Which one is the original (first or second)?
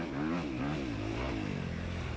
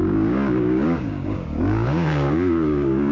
first